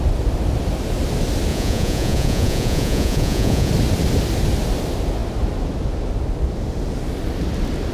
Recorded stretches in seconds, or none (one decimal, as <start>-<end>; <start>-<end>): 0.0-1.5; 3.7-7.9